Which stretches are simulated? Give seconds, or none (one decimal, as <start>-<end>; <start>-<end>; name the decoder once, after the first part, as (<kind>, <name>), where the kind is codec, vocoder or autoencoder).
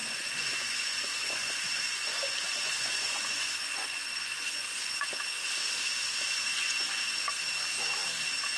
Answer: 0.0-5.1 (vocoder, Vocos); 6.5-7.3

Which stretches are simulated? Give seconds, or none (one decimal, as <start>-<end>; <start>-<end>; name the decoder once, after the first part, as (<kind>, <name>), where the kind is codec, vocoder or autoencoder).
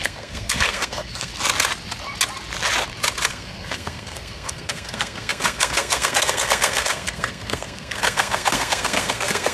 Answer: 0.0-1.3 (codec, SNAC); 3.3-9.5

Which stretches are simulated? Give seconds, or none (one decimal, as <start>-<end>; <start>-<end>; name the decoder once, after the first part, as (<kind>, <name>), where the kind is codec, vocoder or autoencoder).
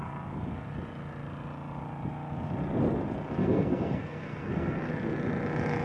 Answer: 3.4-4.9 (codec, SNAC)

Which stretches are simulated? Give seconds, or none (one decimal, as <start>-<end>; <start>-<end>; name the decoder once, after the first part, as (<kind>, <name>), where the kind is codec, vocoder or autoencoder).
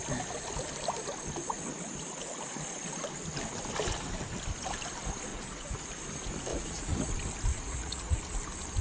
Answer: 5.3-5.9 (vocoder, Vocos); 6.5-7.1; 7.5-8.2